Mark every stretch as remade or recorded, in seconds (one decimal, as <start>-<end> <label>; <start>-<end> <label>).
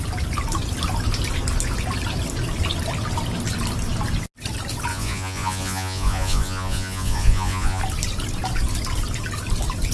0.0-4.9 recorded; 4.9-7.8 remade; 7.8-9.9 recorded